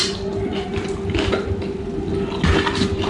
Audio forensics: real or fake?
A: real